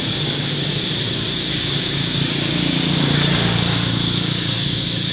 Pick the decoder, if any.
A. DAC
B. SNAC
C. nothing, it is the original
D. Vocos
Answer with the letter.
A